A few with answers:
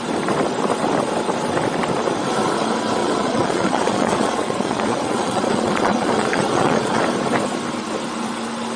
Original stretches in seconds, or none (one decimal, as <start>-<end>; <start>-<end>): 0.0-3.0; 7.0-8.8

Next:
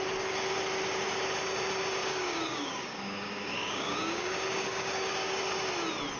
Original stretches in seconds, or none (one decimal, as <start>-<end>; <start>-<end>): 0.0-2.0; 5.4-6.2

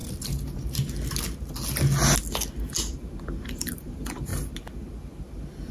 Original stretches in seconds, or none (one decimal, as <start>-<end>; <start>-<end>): 0.0-3.4; 4.3-5.7

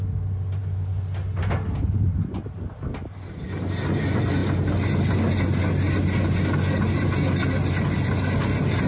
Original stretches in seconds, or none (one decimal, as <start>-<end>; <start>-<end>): 0.0-8.9

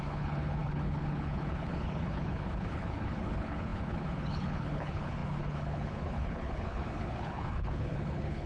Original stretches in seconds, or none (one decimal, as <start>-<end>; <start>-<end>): none